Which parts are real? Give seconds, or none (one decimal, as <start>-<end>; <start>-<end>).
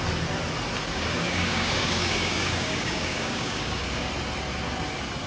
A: 0.0-0.9; 4.1-5.3